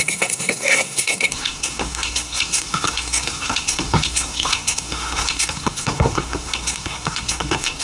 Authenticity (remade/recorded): remade